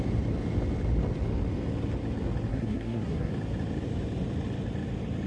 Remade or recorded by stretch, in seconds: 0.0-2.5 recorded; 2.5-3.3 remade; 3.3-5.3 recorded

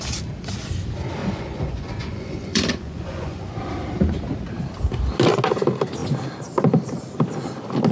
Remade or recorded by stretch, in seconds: 0.0-1.2 recorded; 1.2-3.7 remade; 3.7-7.9 recorded

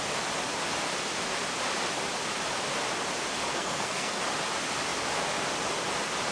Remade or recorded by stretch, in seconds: 0.0-3.5 recorded; 3.5-4.2 remade; 4.2-6.3 recorded

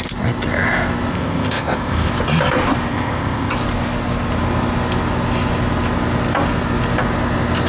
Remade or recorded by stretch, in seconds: 0.0-1.1 recorded; 1.1-2.1 remade; 2.1-2.9 recorded; 2.9-3.5 remade; 3.5-7.7 recorded